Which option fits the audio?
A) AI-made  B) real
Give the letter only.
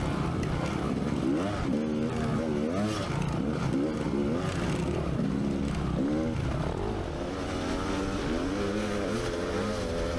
B